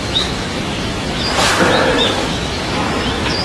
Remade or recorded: remade